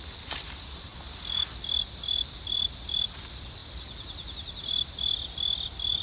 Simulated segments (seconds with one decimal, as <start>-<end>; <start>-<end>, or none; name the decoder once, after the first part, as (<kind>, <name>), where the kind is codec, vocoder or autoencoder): 0.0-0.9 (vocoder, BigVGAN v2); 1.9-3.6; 4.9-6.0